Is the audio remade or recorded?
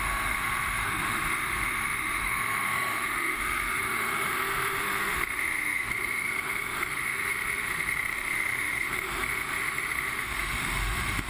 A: remade